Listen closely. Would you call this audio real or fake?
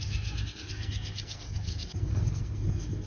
fake